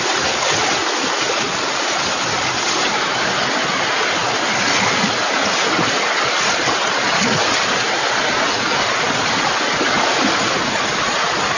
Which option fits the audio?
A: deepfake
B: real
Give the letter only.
B